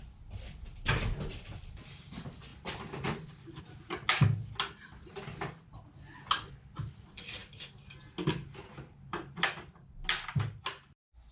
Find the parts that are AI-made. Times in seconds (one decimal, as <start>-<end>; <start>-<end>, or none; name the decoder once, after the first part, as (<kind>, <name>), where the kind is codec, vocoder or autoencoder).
none